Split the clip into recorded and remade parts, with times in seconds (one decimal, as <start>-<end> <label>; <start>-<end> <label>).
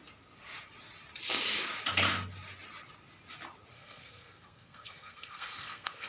0.0-3.7 recorded; 3.7-6.1 remade